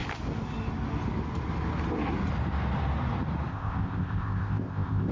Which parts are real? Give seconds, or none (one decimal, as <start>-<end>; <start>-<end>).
0.0-3.5